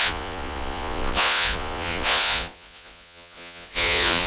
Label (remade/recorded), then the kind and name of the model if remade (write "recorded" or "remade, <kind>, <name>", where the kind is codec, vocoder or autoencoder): remade, vocoder, Vocos